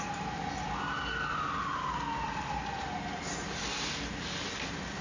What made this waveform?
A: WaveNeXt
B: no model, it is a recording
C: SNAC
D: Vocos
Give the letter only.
B